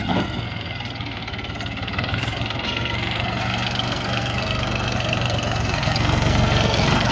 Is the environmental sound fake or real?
fake